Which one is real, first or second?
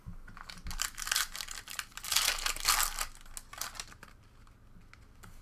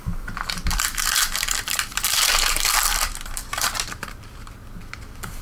first